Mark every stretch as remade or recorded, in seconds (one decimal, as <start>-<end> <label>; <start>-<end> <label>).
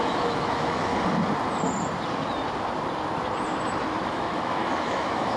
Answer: 0.0-0.9 remade; 0.9-4.1 recorded; 4.1-5.4 remade